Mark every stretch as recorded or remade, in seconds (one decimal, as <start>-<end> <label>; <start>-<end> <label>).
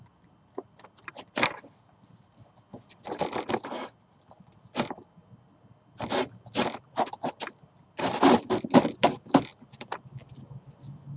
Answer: 0.0-11.2 recorded